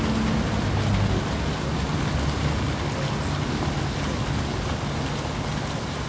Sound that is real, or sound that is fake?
real